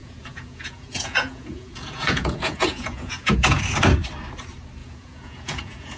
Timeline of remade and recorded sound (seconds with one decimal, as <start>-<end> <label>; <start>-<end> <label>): 0.0-3.6 remade; 3.6-4.8 recorded; 4.8-6.0 remade